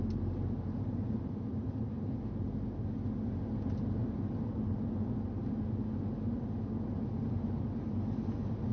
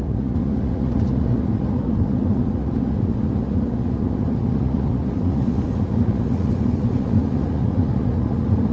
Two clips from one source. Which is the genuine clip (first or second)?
first